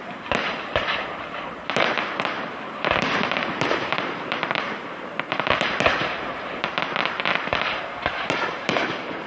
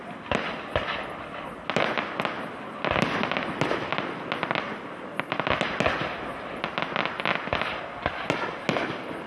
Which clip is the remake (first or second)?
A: first